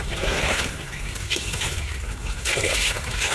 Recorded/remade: remade